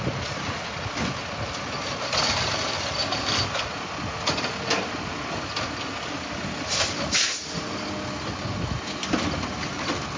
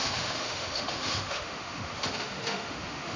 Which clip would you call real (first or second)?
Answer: first